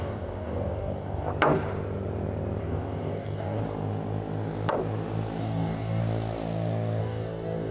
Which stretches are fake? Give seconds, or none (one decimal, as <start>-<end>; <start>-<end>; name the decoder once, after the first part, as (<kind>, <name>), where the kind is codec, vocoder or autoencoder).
0.0-1.3 (codec, DAC); 2.6-3.6; 5.4-6.0; 7.0-7.7